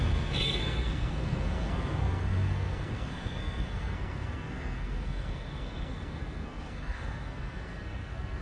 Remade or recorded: remade